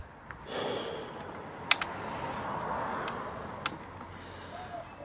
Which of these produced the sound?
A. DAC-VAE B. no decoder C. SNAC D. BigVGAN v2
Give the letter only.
B